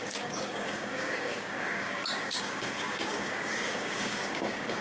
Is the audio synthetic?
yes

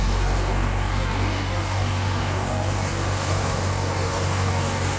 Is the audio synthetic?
yes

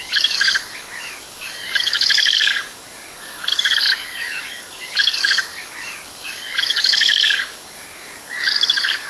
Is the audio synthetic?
yes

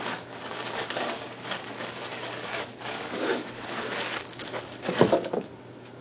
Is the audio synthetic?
yes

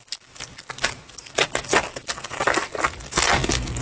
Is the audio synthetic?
no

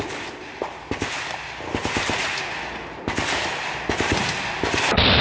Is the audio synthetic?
no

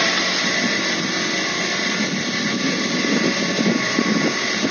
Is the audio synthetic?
no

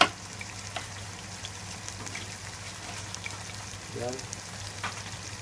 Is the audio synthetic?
no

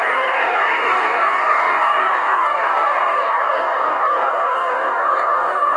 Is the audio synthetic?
yes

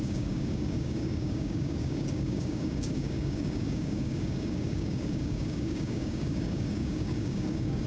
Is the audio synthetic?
yes